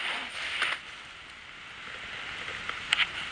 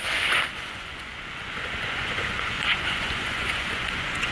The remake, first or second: second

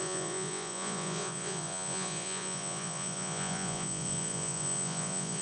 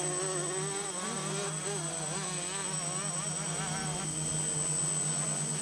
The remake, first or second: first